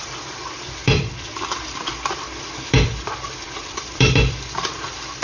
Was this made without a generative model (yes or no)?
no